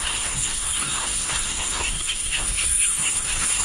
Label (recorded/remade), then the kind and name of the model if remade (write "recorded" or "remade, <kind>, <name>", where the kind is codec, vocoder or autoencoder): remade, codec, SNAC